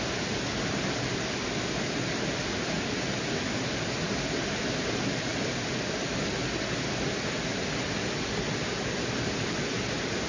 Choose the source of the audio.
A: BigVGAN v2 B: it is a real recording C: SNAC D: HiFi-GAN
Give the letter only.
B